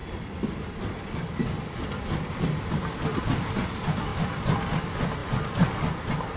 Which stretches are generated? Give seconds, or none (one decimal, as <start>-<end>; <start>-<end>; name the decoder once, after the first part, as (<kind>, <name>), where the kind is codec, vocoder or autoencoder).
0.0-3.2 (vocoder, BigVGAN v2); 4.1-4.7; 5.2-5.7